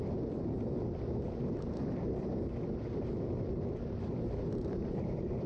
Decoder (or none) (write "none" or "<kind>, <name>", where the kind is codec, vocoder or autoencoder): vocoder, BigVGAN v2